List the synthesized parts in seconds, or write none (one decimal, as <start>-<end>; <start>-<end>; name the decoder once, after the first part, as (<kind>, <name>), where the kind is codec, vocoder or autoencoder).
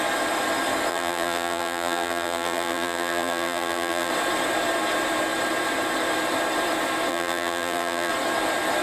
0.9-4.1 (vocoder, BigVGAN v2); 7.1-8.1